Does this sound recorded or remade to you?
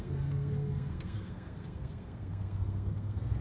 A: remade